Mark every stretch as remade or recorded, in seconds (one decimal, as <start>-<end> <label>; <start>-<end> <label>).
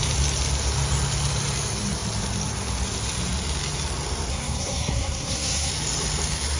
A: 0.0-4.3 recorded; 4.3-5.7 remade; 5.7-6.6 recorded